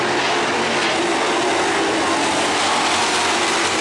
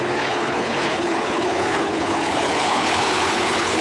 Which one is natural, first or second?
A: first